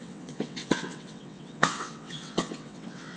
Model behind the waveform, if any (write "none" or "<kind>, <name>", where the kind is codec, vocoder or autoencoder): vocoder, WaveNeXt